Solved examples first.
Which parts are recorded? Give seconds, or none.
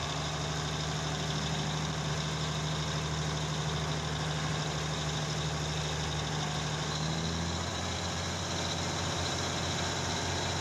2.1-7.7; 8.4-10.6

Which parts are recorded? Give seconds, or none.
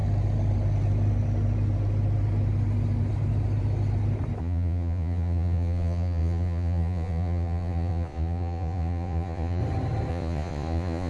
0.0-4.4; 9.6-10.1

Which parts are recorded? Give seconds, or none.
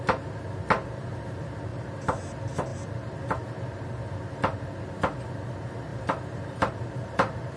0.0-1.7; 2.2-2.7; 3.2-5.9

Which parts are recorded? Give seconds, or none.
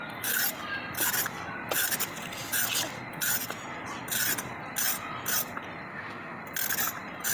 0.0-5.9; 6.4-7.3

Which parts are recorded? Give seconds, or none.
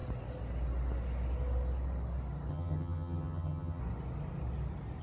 0.0-2.5; 3.8-5.0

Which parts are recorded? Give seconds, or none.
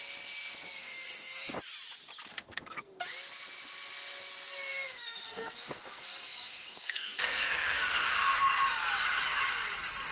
0.0-0.8; 1.6-2.3; 3.0-4.7; 8.4-10.1